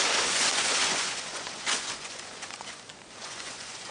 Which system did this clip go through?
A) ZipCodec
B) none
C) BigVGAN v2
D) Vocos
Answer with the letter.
D